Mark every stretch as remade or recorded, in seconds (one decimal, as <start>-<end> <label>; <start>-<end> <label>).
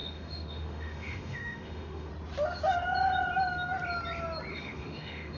0.0-2.1 remade; 2.1-4.5 recorded; 4.5-5.4 remade